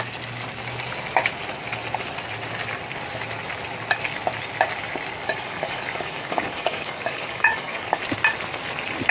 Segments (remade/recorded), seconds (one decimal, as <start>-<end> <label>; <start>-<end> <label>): 0.0-5.2 recorded; 5.2-8.0 remade; 8.0-9.1 recorded